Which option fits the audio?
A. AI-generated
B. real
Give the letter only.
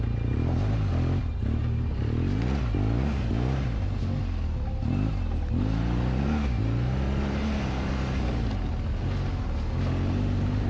B